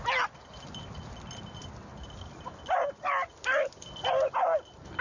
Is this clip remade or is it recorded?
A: recorded